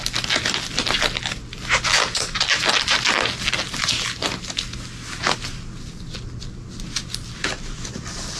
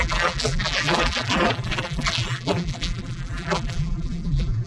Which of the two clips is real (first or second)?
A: first